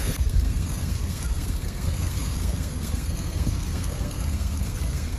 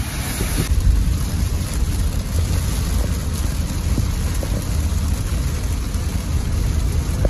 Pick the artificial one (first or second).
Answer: first